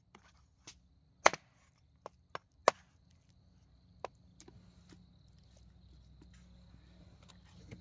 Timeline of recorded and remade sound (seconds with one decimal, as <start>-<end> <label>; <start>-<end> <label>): 0.0-7.8 recorded